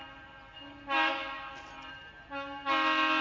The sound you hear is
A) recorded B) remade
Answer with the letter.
A